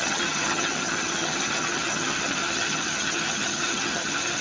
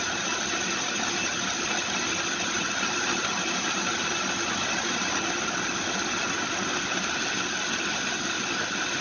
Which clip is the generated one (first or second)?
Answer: first